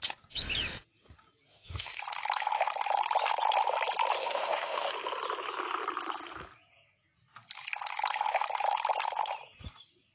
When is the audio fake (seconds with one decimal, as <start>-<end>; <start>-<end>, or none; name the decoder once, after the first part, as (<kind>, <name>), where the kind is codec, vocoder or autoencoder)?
1.5-2.0 (autoencoder, DAC-VAE); 4.2-4.9